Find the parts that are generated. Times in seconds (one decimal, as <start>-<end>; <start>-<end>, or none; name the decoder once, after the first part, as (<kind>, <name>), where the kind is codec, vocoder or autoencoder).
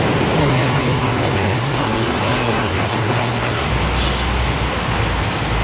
0.4-3.7 (codec, SNAC)